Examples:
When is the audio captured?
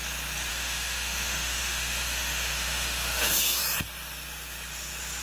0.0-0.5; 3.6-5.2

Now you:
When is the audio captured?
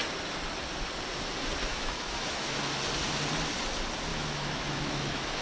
0.0-1.7; 2.6-4.1